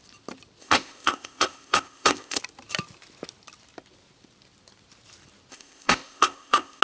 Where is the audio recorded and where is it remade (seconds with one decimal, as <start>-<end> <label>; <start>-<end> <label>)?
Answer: 0.0-0.6 recorded; 0.6-2.4 remade; 2.4-5.5 recorded; 5.5-6.8 remade